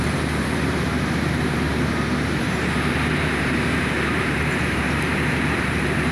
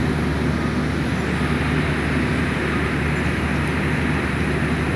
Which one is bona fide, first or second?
second